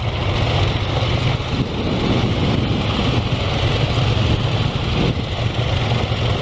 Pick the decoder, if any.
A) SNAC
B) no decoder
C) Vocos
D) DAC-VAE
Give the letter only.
B